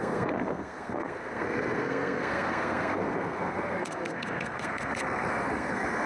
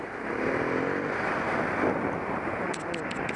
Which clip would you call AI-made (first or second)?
first